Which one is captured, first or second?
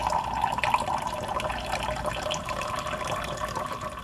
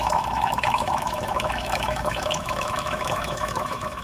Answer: first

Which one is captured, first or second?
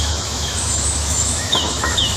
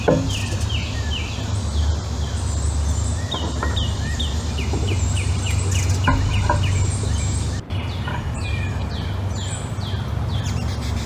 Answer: second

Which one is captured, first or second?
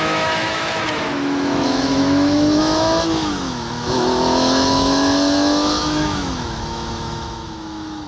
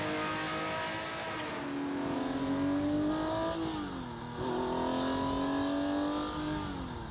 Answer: second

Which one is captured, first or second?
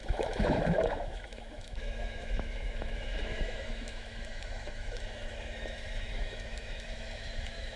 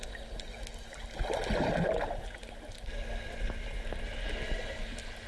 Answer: second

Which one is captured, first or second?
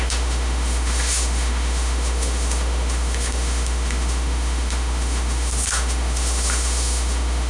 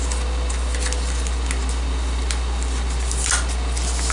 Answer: second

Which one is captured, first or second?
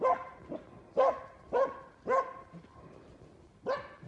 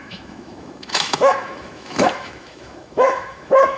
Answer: first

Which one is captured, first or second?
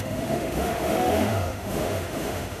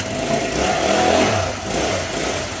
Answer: second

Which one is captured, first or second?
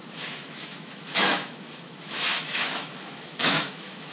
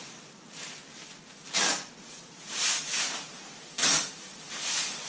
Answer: second